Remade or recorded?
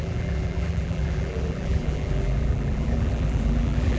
remade